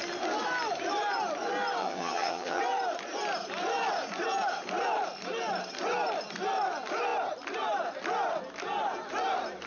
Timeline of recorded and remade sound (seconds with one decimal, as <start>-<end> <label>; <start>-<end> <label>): 0.0-1.8 recorded; 1.8-2.6 remade; 2.6-9.7 recorded